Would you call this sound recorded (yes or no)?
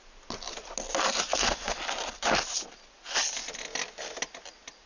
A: yes